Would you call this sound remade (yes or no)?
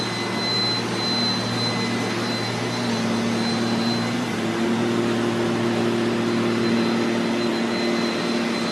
no